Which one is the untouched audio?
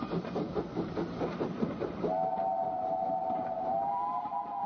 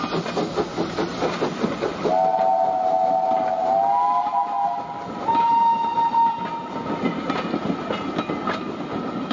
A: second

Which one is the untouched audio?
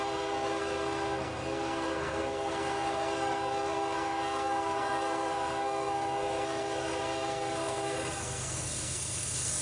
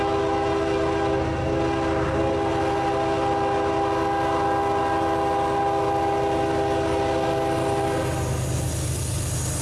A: second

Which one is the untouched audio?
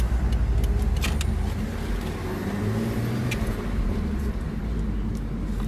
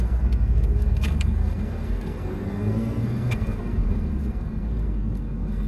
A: first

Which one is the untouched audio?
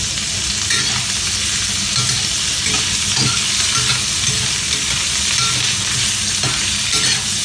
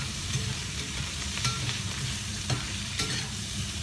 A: first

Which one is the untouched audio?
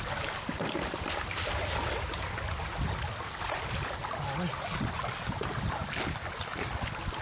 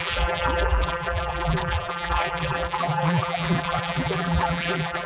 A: first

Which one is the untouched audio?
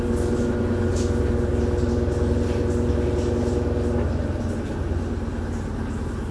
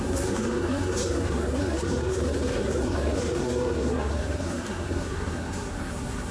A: first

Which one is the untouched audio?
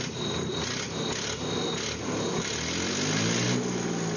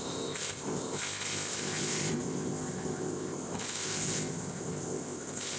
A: first